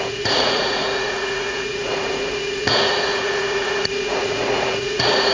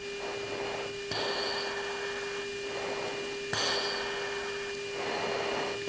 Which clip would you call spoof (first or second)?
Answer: first